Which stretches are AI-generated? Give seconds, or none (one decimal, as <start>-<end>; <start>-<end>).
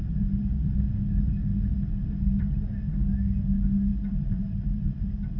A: 3.9-5.4